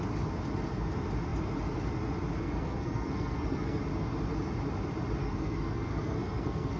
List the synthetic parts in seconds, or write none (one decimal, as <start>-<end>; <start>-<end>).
2.4-3.8; 5.2-6.8